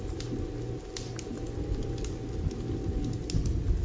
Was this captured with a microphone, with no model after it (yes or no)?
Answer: yes